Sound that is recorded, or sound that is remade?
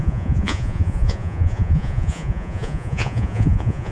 remade